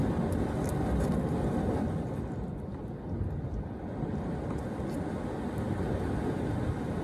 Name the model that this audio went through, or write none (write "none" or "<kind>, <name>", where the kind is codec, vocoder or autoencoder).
none